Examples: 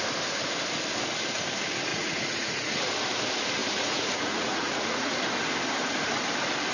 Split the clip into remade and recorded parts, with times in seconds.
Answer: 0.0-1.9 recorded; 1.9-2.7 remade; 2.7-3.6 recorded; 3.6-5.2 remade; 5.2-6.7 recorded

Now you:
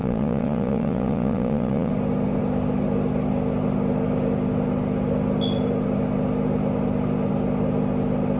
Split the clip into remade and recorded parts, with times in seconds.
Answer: 0.0-1.9 remade; 1.9-8.4 recorded

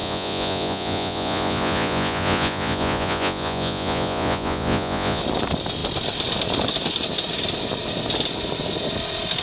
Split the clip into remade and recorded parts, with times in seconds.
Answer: 0.0-5.2 remade; 5.2-9.4 recorded

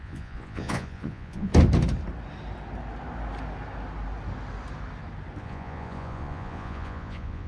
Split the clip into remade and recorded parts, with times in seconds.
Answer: 0.0-1.5 remade; 1.5-5.4 recorded; 5.4-7.5 remade

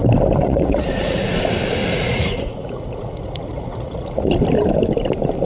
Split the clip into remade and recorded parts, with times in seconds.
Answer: 0.0-0.4 recorded; 0.4-1.3 remade; 1.3-1.8 recorded; 1.8-4.3 remade; 4.3-5.4 recorded